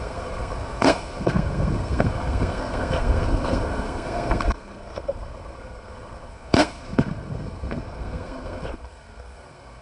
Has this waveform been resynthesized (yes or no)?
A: yes